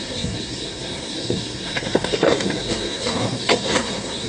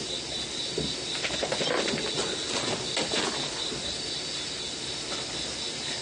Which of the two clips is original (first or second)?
second